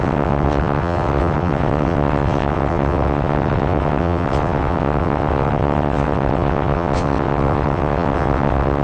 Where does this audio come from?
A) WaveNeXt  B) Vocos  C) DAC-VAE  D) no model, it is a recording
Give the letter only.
A